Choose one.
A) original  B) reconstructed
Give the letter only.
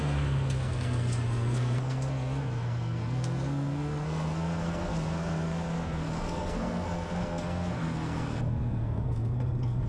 B